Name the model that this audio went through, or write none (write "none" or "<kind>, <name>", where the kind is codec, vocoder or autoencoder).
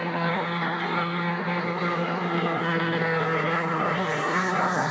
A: codec, SNAC